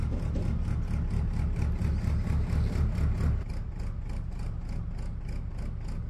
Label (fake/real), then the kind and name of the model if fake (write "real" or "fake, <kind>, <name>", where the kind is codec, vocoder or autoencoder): real